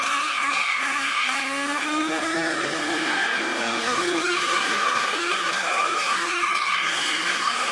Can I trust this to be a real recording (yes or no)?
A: no